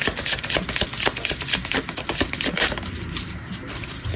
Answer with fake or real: fake